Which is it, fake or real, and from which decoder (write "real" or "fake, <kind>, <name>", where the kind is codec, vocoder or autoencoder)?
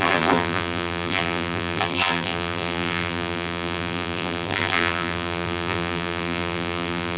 fake, vocoder, BigVGAN v2